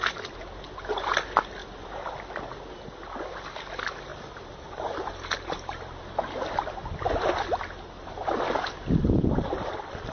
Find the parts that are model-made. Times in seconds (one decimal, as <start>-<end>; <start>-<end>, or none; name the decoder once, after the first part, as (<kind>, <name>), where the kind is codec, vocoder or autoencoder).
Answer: 1.6-2.2 (vocoder, BigVGAN v2); 4.1-6.2